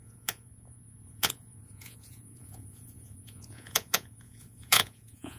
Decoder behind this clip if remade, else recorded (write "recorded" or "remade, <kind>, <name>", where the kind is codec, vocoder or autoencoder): remade, vocoder, Vocos